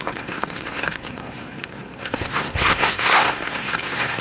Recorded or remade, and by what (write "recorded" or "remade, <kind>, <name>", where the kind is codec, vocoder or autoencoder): remade, codec, SNAC